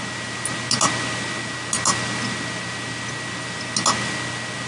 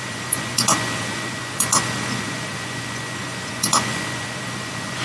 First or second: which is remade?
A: second